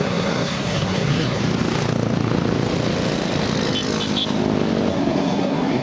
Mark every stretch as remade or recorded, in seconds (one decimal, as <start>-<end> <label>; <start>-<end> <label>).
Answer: 0.0-1.4 remade; 1.4-4.9 recorded; 4.9-5.8 remade